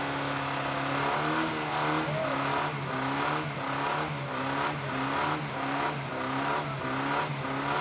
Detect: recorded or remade recorded